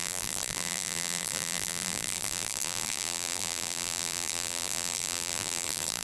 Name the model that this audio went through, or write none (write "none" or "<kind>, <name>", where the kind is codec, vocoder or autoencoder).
vocoder, BigVGAN v2